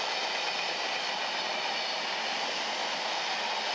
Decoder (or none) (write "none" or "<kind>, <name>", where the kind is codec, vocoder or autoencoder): none